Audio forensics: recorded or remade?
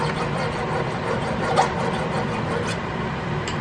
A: recorded